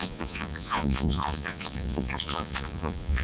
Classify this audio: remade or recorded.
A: remade